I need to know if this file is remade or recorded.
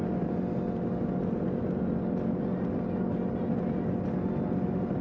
recorded